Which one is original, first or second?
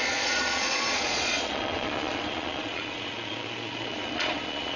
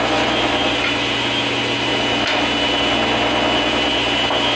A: second